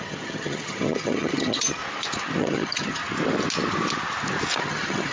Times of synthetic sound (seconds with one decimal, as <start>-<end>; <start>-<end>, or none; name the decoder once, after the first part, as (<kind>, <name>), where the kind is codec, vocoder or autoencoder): 0.0-1.8 (vocoder, HiFi-GAN); 2.4-3.0; 4.6-5.1